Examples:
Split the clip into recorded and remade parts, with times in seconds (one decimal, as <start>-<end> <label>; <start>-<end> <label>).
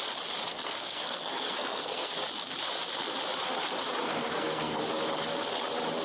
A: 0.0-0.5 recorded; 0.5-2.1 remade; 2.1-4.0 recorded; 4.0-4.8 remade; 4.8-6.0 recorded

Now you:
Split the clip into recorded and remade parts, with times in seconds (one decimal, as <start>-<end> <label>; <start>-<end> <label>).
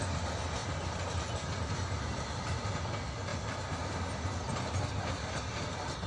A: 0.0-6.1 recorded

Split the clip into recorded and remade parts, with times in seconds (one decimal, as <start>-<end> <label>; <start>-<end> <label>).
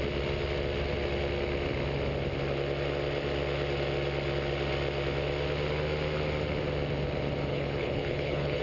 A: 0.0-7.5 recorded; 7.5-8.6 remade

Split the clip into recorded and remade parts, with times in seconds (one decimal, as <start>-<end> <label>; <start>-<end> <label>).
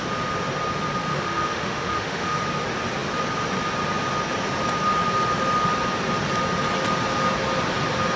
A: 0.0-1.1 recorded; 1.1-2.4 remade; 2.4-8.2 recorded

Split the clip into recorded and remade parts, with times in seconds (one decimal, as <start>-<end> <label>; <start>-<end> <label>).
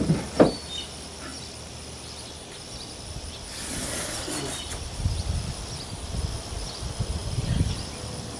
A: 0.0-7.2 recorded; 7.2-7.8 remade; 7.8-8.4 recorded